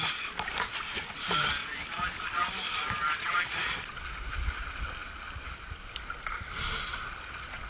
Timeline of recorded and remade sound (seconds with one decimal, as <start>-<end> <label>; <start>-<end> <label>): 0.0-1.6 recorded; 1.6-4.0 remade; 4.0-5.0 recorded; 5.0-5.9 remade; 5.9-6.9 recorded; 6.9-7.7 remade